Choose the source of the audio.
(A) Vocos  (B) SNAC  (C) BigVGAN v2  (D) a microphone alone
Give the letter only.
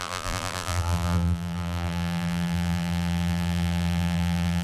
C